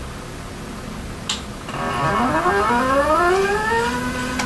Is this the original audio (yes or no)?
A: yes